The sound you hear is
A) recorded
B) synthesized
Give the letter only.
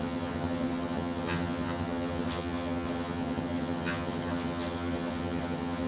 B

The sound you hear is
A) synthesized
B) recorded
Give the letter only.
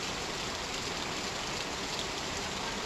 B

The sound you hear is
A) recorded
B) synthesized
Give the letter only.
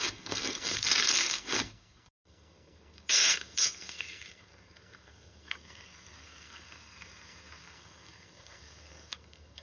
B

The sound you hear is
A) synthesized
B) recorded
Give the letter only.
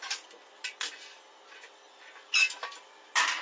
B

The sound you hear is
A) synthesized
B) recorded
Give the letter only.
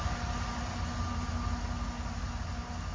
B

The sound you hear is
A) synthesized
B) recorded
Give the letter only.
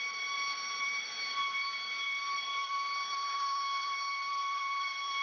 A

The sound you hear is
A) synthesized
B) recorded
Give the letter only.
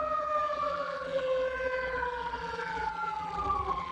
A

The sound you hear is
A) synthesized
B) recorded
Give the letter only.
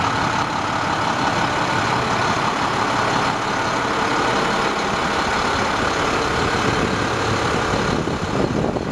B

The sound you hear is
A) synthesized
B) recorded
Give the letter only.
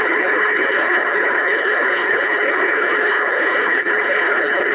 A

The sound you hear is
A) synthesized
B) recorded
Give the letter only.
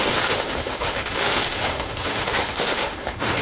A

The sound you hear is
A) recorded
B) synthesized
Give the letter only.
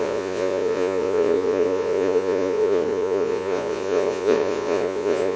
B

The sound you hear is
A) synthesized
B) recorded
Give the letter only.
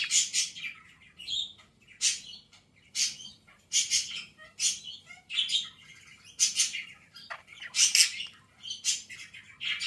B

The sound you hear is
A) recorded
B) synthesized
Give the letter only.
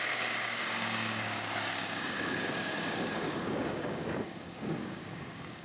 B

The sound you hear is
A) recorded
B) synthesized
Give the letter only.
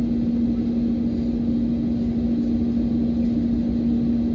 A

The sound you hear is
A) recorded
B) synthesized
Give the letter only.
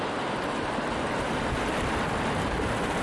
A